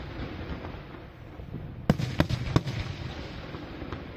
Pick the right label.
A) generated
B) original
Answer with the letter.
B